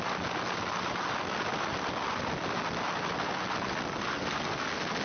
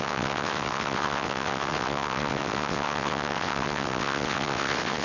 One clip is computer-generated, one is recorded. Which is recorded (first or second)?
first